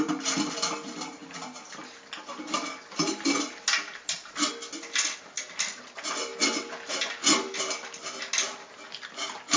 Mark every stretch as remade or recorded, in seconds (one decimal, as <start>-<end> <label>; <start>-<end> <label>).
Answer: 0.0-9.6 recorded